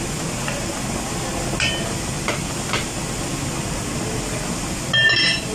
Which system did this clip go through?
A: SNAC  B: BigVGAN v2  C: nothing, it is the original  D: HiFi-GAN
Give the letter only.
C